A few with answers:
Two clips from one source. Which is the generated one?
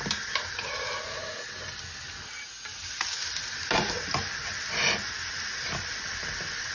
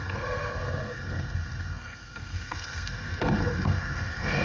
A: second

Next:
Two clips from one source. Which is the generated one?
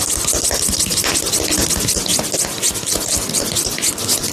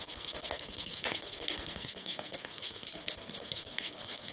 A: second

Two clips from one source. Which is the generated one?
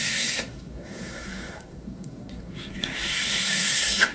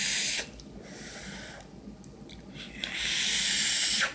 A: first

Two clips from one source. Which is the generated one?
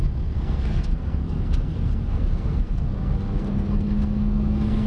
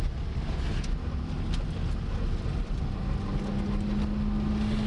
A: first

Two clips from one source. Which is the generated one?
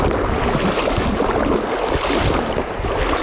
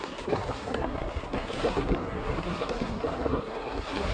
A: second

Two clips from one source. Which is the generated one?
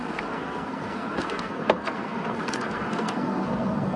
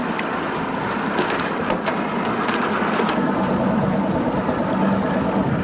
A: first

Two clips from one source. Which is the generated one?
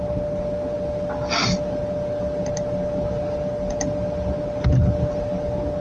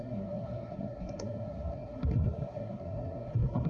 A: second